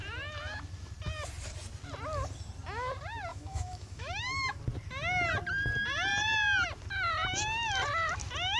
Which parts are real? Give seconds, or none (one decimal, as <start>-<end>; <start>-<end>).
0.0-3.3; 4.6-8.6